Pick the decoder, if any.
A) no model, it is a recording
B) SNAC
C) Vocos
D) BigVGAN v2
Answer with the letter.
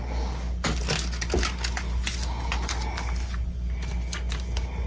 A